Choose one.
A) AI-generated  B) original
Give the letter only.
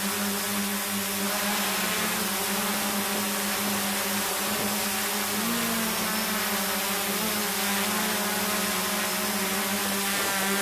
B